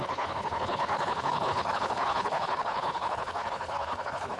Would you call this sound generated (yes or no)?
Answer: yes